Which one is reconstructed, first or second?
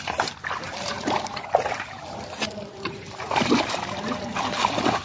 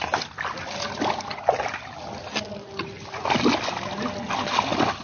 first